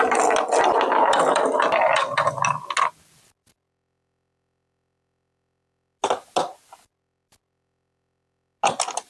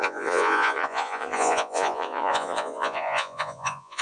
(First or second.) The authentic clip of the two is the first